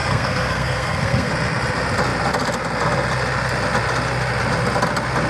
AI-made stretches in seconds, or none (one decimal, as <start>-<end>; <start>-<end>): 0.0-1.3